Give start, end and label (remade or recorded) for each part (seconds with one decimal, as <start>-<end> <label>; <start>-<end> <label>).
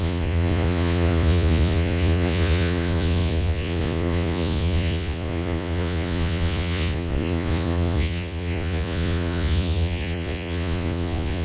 0.0-11.4 remade